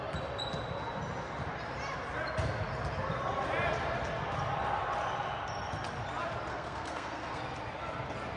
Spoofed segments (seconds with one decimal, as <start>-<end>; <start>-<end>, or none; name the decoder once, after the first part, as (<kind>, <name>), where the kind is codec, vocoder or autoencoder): 6.5-7.4 (codec, SNAC)